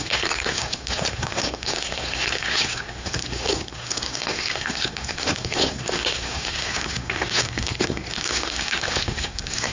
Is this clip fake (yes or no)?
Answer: yes